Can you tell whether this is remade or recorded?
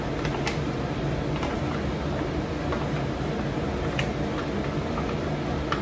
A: recorded